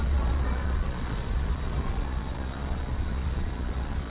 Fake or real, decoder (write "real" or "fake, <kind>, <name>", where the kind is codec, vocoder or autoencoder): fake, vocoder, Vocos